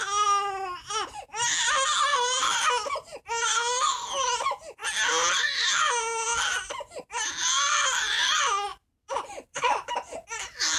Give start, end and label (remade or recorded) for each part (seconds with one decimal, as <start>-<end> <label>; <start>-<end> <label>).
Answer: 0.0-2.1 recorded; 2.1-2.7 remade; 2.7-8.7 recorded; 8.7-9.9 remade; 9.9-10.8 recorded